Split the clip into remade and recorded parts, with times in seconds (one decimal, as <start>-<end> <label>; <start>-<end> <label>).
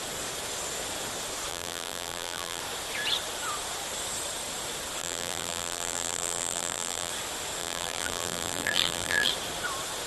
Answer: 0.0-1.5 recorded; 1.5-2.6 remade; 2.6-5.0 recorded; 5.0-7.1 remade; 7.1-7.6 recorded; 7.6-9.3 remade; 9.3-10.1 recorded